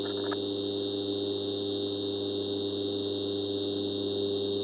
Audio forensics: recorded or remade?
recorded